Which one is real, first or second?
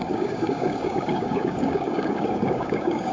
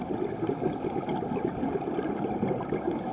second